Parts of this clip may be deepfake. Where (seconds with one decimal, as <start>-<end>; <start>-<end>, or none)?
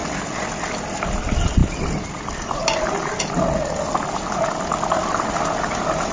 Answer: none